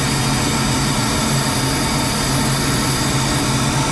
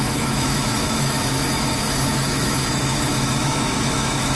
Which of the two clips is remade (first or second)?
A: second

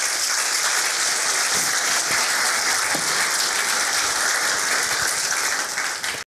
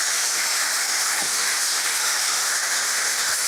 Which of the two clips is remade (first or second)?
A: second